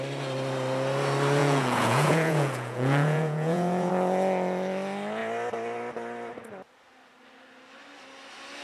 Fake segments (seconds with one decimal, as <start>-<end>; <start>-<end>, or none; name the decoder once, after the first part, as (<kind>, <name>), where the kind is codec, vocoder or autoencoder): 1.4-3.9 (vocoder, Vocos)